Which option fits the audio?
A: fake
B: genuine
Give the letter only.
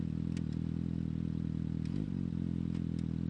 B